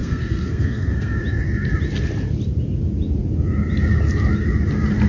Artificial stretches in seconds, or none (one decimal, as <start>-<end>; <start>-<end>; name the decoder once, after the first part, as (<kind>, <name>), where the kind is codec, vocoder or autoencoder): 0.0-1.2 (codec, SNAC)